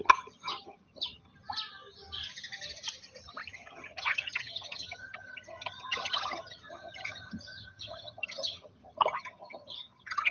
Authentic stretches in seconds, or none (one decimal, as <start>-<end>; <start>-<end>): 1.3-3.5